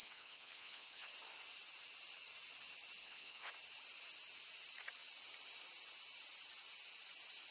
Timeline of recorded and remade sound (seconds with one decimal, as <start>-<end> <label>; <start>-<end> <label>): 0.0-1.1 remade; 1.1-3.0 recorded; 3.0-3.5 remade; 3.5-7.5 recorded